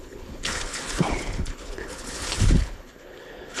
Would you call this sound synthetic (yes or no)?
yes